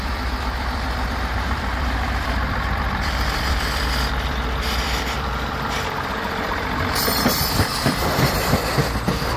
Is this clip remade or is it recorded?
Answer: remade